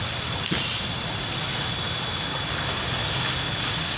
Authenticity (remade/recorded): recorded